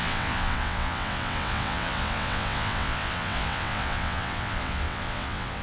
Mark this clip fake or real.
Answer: fake